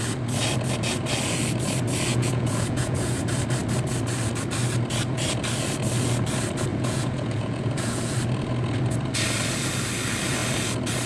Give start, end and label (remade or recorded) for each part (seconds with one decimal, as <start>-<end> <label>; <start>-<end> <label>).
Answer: 0.0-2.1 recorded; 2.1-3.2 remade; 3.2-6.7 recorded; 6.7-8.1 remade; 8.1-11.1 recorded